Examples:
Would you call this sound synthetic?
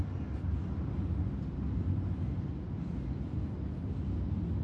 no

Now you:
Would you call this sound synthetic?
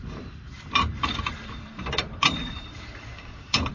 yes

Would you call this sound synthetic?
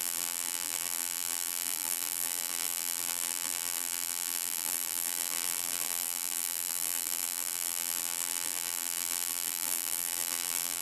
yes